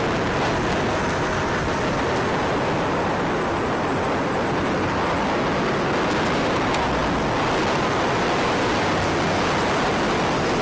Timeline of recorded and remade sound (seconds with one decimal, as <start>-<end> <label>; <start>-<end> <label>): 0.0-10.6 recorded